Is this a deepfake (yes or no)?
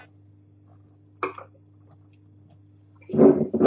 no